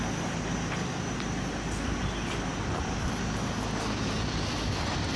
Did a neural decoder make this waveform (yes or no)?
no